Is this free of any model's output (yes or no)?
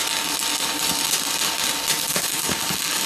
yes